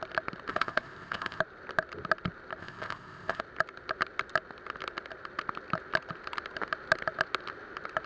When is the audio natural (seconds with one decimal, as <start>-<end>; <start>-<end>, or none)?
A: 0.0-0.5; 1.4-2.6; 3.4-8.1